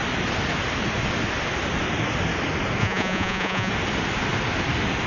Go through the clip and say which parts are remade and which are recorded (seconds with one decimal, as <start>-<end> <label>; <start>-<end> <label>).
0.0-2.8 recorded; 2.8-3.7 remade; 3.7-5.1 recorded